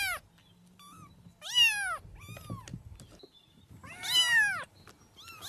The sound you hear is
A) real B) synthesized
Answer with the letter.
A